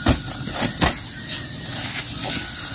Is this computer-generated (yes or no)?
no